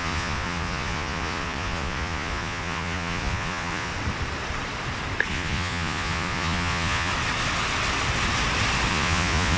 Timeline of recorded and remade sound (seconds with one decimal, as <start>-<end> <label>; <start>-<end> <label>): 0.0-3.9 remade; 3.9-5.3 recorded; 5.3-7.1 remade; 7.1-8.9 recorded; 8.9-9.6 remade